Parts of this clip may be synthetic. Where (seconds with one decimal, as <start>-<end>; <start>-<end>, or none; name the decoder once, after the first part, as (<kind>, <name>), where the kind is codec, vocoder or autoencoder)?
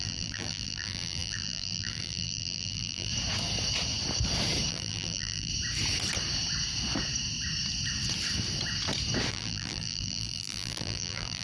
0.0-3.1 (vocoder, BigVGAN v2); 4.7-5.5; 9.3-11.4